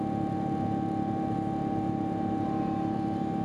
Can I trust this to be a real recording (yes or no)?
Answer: yes